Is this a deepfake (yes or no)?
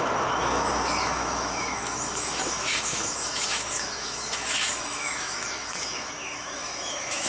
yes